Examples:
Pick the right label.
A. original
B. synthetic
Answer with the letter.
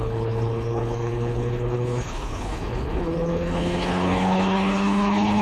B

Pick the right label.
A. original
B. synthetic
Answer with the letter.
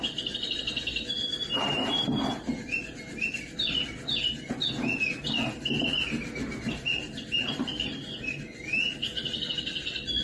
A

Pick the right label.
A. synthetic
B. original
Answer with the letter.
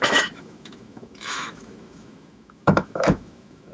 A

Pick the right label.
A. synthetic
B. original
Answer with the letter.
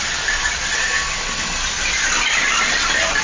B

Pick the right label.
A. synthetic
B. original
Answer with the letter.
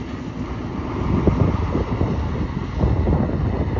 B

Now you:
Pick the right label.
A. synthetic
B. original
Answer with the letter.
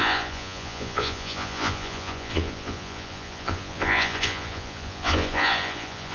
A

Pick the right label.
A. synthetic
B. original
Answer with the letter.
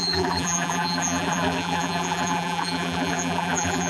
A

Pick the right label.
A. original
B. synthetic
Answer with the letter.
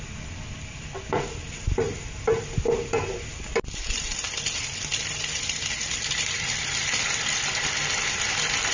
B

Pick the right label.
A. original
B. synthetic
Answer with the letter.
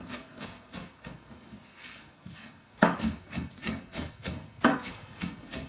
B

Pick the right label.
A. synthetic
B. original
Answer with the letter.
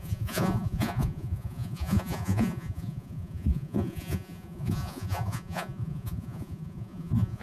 A